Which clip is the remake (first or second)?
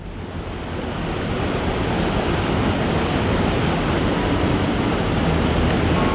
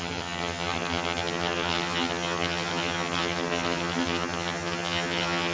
second